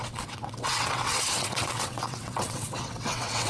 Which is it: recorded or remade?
remade